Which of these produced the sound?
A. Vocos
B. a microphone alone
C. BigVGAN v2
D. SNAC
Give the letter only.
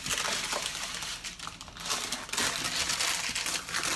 B